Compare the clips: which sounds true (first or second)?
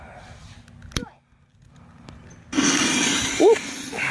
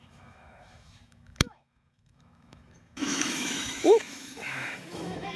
first